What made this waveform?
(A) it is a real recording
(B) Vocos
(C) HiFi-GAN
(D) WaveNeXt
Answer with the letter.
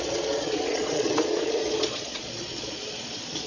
B